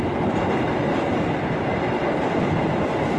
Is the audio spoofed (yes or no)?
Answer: no